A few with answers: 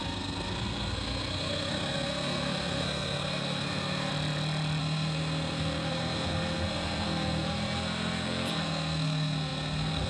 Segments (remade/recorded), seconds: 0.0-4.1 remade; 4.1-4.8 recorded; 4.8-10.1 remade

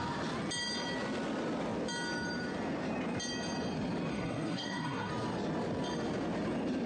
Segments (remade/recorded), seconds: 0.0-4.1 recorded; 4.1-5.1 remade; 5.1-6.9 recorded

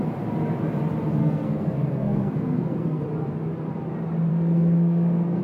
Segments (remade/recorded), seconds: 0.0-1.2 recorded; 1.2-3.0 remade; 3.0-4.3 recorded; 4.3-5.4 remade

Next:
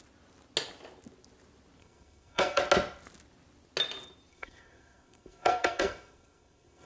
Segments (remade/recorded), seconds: 0.0-1.8 recorded; 1.8-2.6 remade; 2.6-4.3 recorded; 4.3-6.9 remade

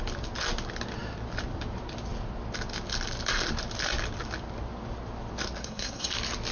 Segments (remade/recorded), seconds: 0.0-5.6 recorded; 5.6-6.1 remade; 6.1-6.5 recorded